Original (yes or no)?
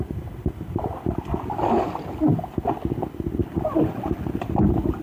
yes